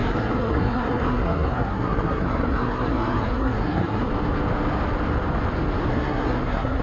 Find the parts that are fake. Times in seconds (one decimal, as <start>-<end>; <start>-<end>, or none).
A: 0.0-4.1; 5.9-6.8